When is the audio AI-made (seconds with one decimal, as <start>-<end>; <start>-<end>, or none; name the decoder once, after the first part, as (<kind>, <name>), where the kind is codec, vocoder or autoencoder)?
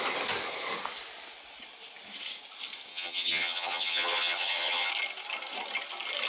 2.9-4.9 (vocoder, HiFi-GAN)